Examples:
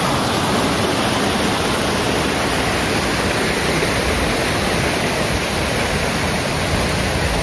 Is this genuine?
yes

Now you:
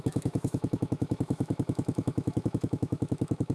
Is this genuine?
no